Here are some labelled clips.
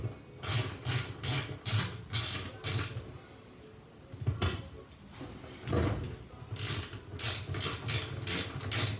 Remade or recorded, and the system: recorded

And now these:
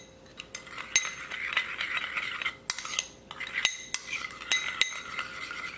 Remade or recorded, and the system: recorded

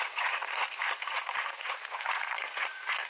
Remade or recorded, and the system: remade, vocoder, Vocos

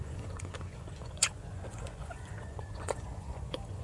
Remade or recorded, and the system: remade, vocoder, Vocos